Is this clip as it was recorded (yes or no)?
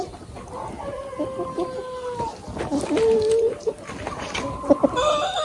yes